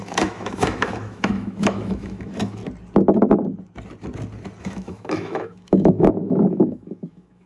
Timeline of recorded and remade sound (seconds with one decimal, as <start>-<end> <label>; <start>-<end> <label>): 0.0-2.6 remade; 2.6-4.6 recorded; 4.6-7.5 remade